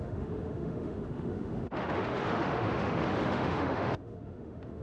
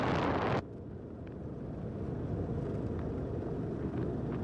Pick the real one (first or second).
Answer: second